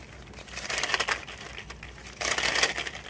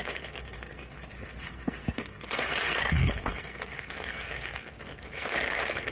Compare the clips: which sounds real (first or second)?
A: first